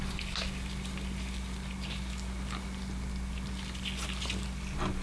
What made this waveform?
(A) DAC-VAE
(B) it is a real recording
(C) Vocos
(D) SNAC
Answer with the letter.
B